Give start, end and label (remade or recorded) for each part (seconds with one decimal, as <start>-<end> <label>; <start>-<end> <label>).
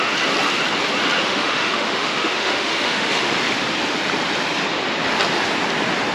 0.0-1.2 recorded; 1.2-3.3 remade; 3.3-6.1 recorded